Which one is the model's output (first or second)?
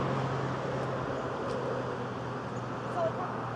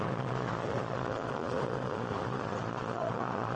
second